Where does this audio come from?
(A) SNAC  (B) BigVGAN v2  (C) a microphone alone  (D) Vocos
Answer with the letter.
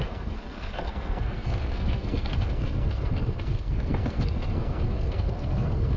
A